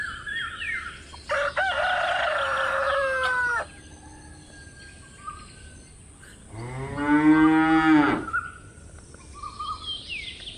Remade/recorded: recorded